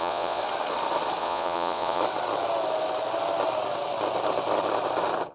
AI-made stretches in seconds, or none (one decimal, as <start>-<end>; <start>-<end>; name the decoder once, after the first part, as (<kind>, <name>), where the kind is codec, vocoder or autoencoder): 0.0-0.4 (vocoder, Vocos); 1.2-2.0